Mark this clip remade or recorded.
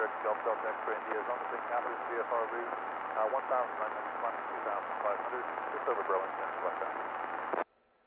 recorded